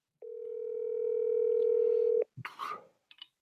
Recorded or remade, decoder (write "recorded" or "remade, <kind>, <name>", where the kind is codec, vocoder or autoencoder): recorded